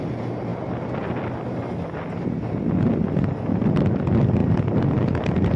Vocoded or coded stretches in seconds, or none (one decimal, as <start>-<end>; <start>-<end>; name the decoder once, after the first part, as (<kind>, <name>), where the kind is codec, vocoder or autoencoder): none